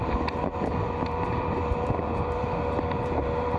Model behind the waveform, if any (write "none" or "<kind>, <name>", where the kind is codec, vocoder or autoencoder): vocoder, BigVGAN v2